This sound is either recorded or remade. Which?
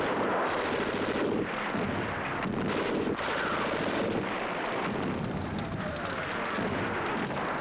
recorded